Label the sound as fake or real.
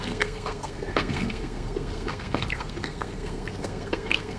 fake